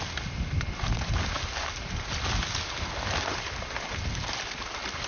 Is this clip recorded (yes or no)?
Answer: yes